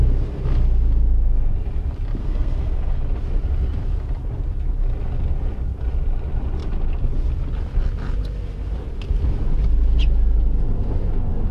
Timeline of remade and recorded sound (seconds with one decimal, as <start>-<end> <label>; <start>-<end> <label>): 0.0-2.2 recorded; 2.2-3.0 remade; 3.0-11.5 recorded